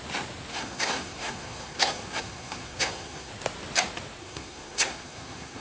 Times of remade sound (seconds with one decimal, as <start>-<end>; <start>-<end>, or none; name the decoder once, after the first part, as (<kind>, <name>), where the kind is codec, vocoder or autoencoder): 0.5-3.3 (codec, SNAC); 4.2-5.6